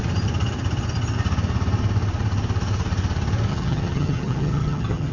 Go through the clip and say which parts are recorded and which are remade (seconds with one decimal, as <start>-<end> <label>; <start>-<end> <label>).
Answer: 0.0-3.5 recorded; 3.5-5.1 remade